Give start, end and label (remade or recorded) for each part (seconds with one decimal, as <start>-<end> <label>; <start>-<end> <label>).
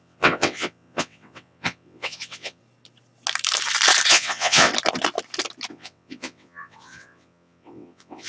0.0-2.6 remade; 2.6-4.1 recorded; 4.1-4.7 remade; 4.7-5.7 recorded; 5.7-8.3 remade